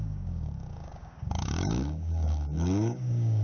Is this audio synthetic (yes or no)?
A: yes